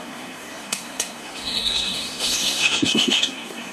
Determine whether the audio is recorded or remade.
remade